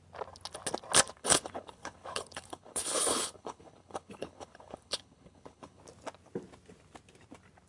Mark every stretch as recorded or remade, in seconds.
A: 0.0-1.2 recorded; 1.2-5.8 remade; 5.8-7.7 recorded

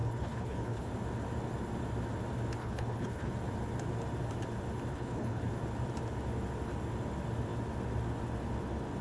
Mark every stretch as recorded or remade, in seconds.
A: 0.0-0.9 remade; 0.9-2.6 recorded; 2.6-3.3 remade; 3.3-4.9 recorded; 4.9-5.5 remade; 5.5-9.0 recorded

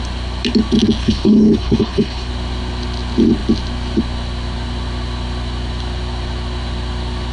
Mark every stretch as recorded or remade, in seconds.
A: 0.0-1.0 recorded; 1.0-2.3 remade; 2.3-7.3 recorded

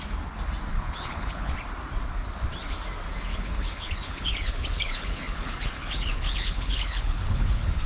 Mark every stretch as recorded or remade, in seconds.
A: 0.0-0.7 recorded; 0.7-1.5 remade; 1.5-3.3 recorded; 3.3-7.9 remade

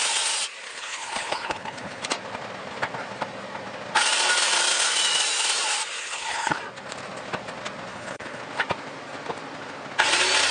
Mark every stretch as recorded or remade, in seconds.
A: 0.0-0.7 recorded; 0.7-2.0 remade; 2.0-6.0 recorded; 6.0-6.6 remade; 6.6-7.9 recorded; 7.9-8.4 remade; 8.4-10.5 recorded

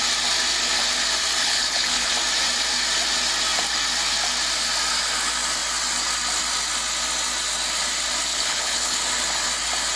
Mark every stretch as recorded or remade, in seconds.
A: 0.0-1.4 recorded; 1.4-2.1 remade; 2.1-8.3 recorded; 8.3-9.0 remade; 9.0-10.0 recorded